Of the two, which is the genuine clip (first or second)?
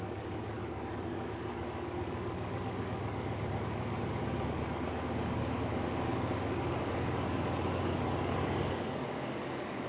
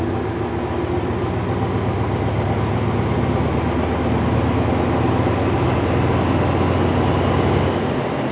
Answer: second